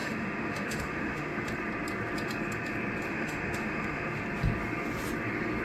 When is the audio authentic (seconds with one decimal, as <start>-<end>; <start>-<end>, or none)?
1.5-3.1; 4.2-5.6